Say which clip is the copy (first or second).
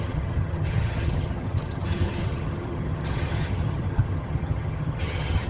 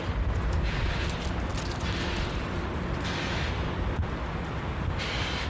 first